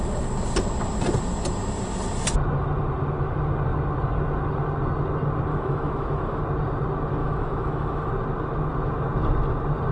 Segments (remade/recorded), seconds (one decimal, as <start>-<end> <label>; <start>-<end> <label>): 0.0-5.5 recorded; 5.5-6.4 remade; 6.4-7.2 recorded; 7.2-8.1 remade; 8.1-9.9 recorded